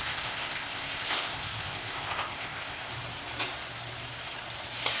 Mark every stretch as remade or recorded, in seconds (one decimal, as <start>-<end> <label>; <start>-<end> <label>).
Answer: 0.0-2.9 remade; 2.9-5.0 recorded